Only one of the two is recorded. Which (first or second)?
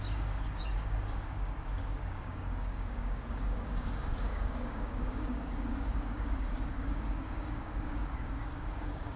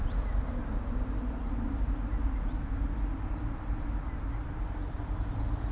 second